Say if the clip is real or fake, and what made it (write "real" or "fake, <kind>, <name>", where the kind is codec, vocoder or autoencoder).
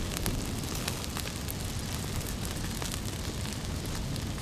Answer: real